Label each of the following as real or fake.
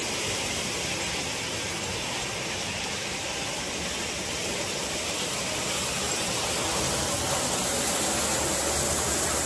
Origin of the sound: real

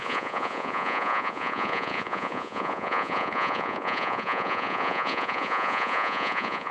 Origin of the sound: fake